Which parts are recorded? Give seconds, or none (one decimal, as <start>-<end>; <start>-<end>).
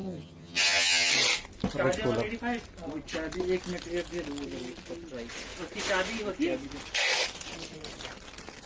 1.1-8.7